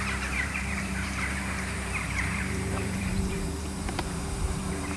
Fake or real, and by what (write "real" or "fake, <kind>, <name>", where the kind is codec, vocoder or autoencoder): fake, vocoder, BigVGAN v2